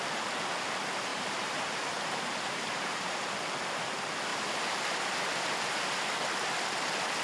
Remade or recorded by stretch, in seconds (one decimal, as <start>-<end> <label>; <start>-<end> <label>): 0.0-1.1 recorded; 1.1-3.2 remade; 3.2-4.3 recorded; 4.3-5.8 remade; 5.8-7.2 recorded